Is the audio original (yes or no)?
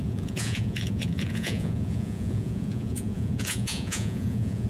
no